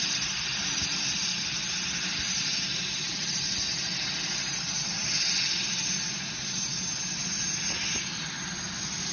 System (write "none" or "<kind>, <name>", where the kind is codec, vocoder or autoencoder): none